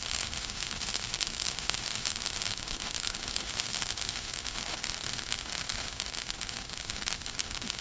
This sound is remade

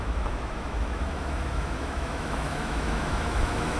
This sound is remade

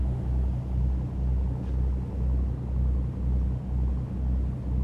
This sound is recorded